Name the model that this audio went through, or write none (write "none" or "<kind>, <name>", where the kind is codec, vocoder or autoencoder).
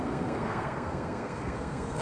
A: codec, SNAC